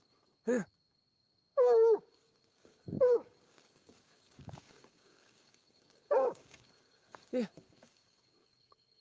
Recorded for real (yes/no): no